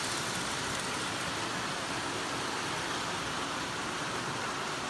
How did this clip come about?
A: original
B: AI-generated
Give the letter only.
A